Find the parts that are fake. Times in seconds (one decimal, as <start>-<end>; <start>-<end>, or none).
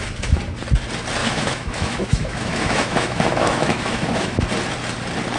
1.2-4.4